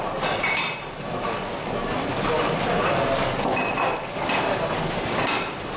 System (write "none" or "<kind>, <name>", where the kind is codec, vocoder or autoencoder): none